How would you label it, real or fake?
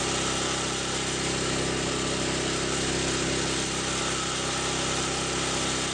real